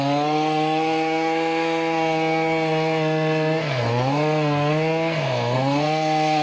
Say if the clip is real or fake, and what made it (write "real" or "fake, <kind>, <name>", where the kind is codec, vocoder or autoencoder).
fake, codec, SNAC